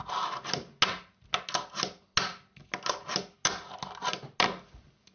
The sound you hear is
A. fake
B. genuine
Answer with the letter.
B